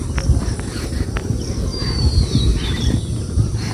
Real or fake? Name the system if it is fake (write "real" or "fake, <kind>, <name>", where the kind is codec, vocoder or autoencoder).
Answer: real